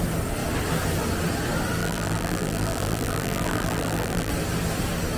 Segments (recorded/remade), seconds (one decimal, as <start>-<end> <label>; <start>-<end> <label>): 0.0-1.8 recorded; 1.8-4.3 remade; 4.3-5.2 recorded